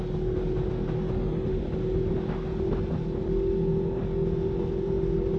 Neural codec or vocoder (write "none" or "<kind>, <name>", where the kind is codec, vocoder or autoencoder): none